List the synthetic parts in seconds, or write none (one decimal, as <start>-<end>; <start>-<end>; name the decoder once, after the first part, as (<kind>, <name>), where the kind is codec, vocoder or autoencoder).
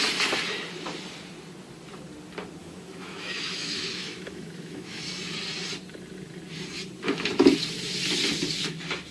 2.6-5.0 (autoencoder, DAC-VAE)